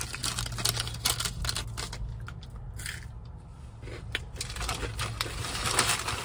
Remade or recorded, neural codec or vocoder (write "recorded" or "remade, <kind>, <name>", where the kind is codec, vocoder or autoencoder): recorded